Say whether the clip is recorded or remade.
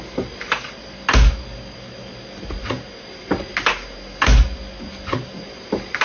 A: recorded